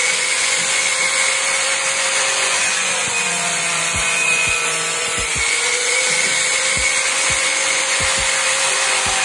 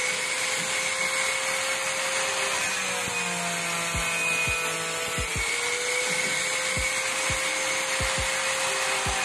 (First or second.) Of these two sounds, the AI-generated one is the first